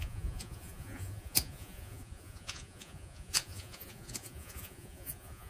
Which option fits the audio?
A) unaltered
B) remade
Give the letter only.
B